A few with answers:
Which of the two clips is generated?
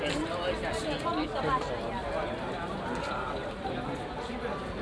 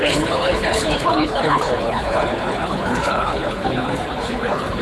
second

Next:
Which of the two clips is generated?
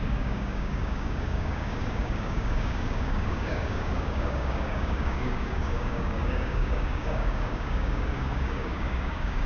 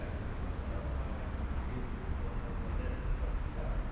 first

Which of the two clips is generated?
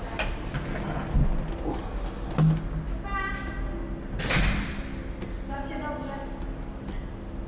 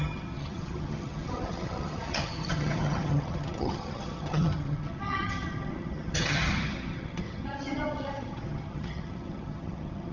second